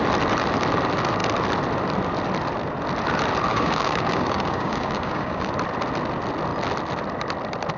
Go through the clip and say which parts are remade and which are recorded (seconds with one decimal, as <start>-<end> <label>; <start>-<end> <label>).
0.0-3.5 recorded; 3.5-5.5 remade; 5.5-7.8 recorded